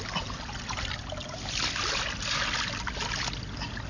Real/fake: real